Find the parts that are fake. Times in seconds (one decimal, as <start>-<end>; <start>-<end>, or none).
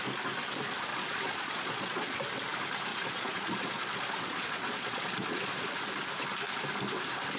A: 0.9-2.2; 2.9-5.7